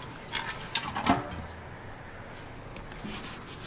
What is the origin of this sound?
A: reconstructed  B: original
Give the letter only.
B